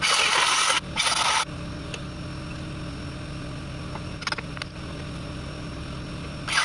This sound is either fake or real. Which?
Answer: real